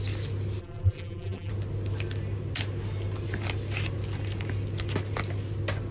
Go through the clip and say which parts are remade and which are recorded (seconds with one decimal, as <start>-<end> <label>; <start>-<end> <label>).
0.0-0.6 recorded; 0.6-1.5 remade; 1.5-5.9 recorded

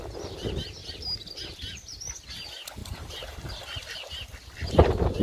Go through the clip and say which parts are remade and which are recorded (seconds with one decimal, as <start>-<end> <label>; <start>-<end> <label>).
0.0-2.8 recorded; 2.8-3.5 remade; 3.5-5.2 recorded

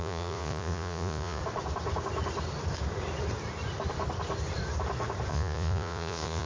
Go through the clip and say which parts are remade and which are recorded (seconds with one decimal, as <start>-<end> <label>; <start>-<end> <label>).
0.0-1.4 remade; 1.4-5.3 recorded; 5.3-6.5 remade

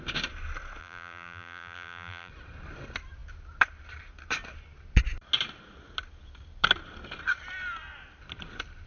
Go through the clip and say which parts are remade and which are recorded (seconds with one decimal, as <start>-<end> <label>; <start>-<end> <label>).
0.0-0.8 recorded; 0.8-2.3 remade; 2.3-8.9 recorded

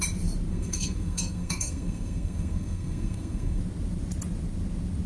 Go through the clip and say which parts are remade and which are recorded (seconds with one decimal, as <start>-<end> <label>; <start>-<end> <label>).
0.0-0.5 recorded; 0.5-3.6 remade; 3.6-5.1 recorded

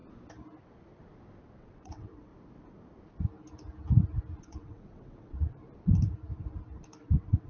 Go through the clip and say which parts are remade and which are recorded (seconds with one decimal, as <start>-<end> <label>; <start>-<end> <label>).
0.0-1.6 recorded; 1.6-2.3 remade; 2.3-4.4 recorded; 4.4-5.6 remade; 5.6-7.0 recorded; 7.0-7.5 remade

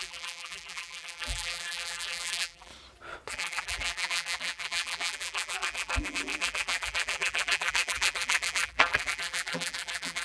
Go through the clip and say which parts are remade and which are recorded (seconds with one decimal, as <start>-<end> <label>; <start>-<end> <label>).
0.0-2.7 remade; 2.7-3.3 recorded; 3.3-10.2 remade